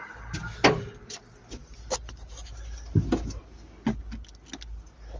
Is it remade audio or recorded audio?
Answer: recorded